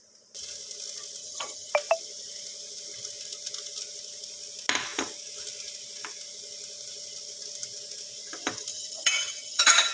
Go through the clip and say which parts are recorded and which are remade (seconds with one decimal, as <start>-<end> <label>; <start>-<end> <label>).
0.0-1.2 recorded; 1.2-1.7 remade; 1.7-8.7 recorded; 8.7-9.9 remade